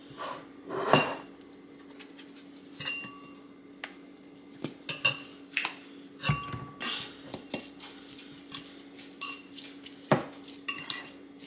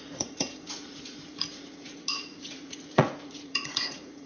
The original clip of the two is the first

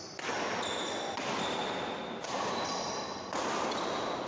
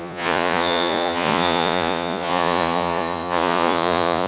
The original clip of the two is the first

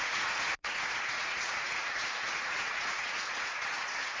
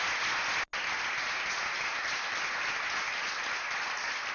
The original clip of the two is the second